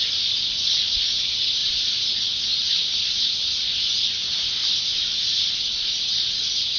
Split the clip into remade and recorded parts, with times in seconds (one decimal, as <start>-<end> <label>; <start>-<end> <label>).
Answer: 0.0-6.8 recorded